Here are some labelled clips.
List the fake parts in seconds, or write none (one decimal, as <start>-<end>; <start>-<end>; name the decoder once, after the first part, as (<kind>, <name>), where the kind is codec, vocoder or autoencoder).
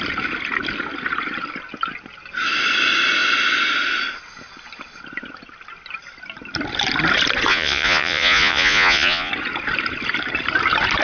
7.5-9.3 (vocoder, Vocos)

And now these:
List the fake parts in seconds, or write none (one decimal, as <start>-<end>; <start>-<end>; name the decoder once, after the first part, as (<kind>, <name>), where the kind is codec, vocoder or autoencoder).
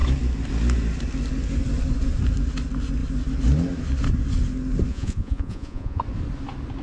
4.9-6.0 (vocoder, Vocos)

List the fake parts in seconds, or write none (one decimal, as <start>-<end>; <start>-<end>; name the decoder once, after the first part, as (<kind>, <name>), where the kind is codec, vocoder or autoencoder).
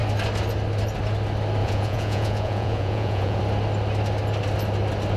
1.6-3.4 (vocoder, Vocos)